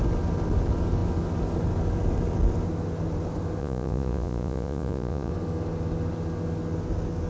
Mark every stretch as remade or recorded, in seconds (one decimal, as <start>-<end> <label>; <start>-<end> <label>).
0.0-3.6 recorded; 3.6-5.3 remade; 5.3-7.3 recorded